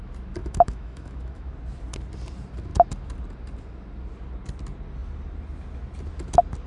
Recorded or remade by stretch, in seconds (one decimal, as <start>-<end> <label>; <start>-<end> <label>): 0.0-0.4 recorded; 0.4-1.5 remade; 1.5-6.7 recorded